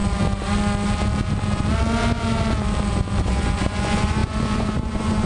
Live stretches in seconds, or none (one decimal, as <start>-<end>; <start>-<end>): 0.0-3.2